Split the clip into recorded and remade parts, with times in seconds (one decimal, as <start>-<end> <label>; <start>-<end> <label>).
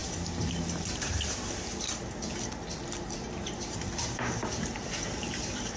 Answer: 0.0-1.7 remade; 1.7-2.7 recorded; 2.7-5.8 remade